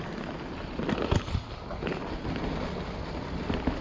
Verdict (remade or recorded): recorded